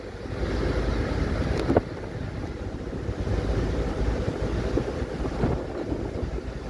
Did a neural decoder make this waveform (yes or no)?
no